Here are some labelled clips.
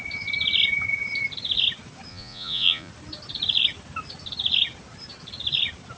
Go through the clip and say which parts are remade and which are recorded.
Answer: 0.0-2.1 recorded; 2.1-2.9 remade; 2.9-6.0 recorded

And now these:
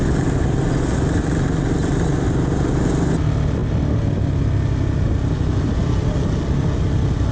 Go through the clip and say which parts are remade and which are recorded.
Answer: 0.0-7.3 recorded

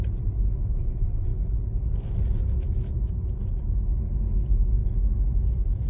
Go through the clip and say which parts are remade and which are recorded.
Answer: 0.0-5.9 recorded

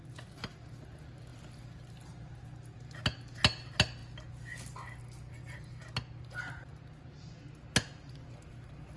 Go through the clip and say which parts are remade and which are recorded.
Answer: 0.0-9.0 recorded

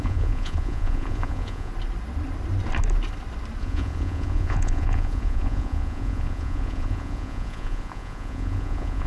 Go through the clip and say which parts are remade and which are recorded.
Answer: 0.0-1.7 remade; 1.7-3.6 recorded; 3.6-9.1 remade

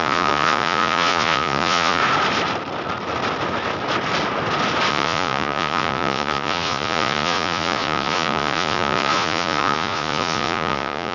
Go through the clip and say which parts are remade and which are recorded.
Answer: 0.0-2.0 remade; 2.0-4.9 recorded; 4.9-11.1 remade

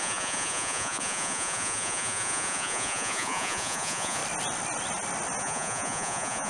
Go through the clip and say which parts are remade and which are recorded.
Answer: 0.0-4.2 remade; 4.2-5.4 recorded; 5.4-6.5 remade